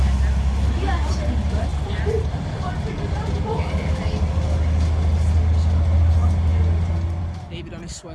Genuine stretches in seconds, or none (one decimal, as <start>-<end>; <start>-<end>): 0.0-1.7; 3.6-8.1